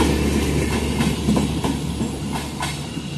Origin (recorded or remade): recorded